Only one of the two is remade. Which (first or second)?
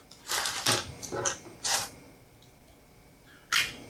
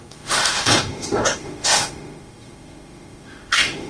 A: second